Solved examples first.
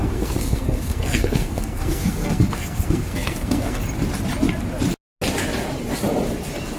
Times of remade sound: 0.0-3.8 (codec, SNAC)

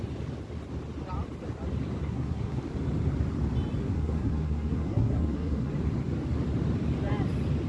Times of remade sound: 2.0-2.6 (codec, SNAC); 3.8-5.7

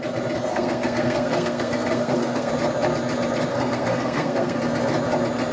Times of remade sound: 0.5-2.5 (codec, SNAC); 3.5-4.6

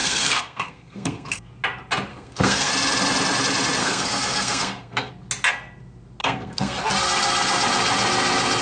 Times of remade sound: 0.0-1.5 (codec, SNAC); 2.1-2.7; 3.8-5.1; 6.2-6.8

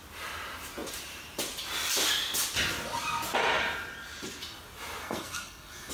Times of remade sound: 5.0-5.9 (codec, SNAC)